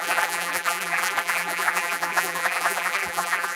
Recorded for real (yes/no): no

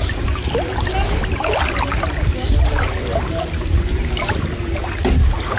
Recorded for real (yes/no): yes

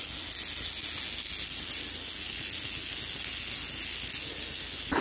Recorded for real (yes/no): yes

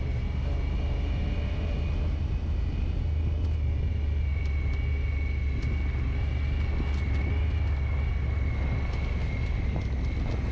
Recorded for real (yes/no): yes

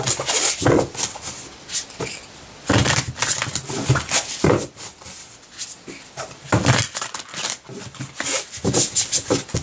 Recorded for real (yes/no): yes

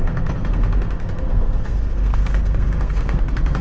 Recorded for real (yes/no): no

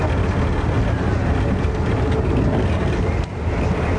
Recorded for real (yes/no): yes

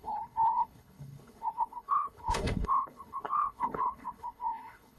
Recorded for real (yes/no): no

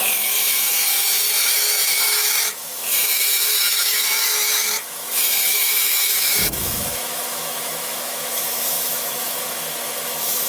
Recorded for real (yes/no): no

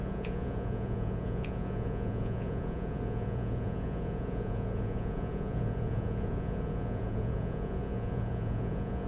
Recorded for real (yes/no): no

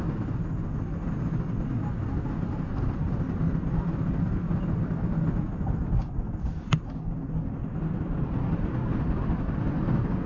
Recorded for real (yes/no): yes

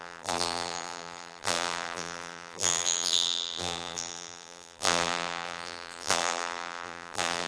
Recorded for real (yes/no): no